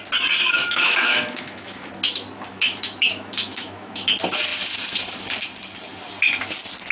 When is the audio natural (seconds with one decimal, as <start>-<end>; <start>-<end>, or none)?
0.0-0.4; 1.9-2.5; 4.1-6.9